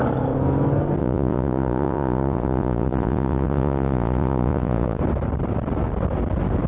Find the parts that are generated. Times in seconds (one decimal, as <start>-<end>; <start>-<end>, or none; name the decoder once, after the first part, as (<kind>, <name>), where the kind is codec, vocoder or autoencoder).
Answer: 1.0-5.0 (vocoder, Vocos)